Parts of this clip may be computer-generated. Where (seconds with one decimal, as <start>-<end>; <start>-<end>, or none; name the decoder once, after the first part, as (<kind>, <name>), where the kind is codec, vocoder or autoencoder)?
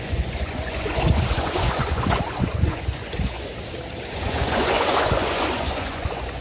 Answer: 0.0-3.5 (vocoder, Vocos); 4.1-6.4